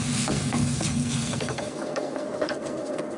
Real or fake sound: fake